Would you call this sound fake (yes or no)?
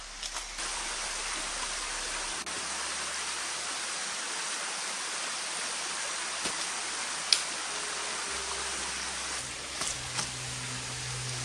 no